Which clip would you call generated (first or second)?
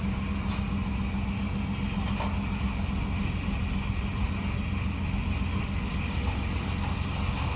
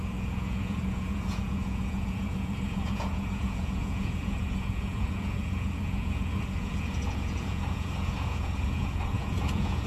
second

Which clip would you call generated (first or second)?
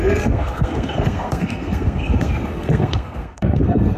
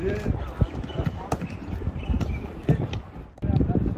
first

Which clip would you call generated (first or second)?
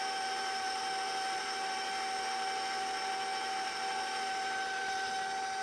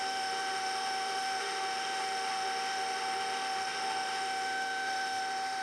second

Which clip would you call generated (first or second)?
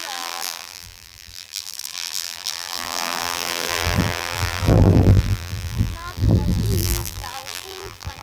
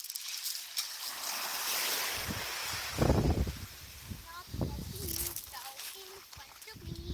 first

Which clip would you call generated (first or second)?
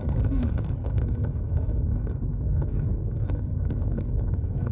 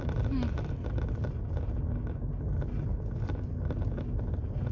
first